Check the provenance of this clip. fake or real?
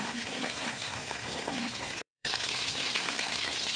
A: fake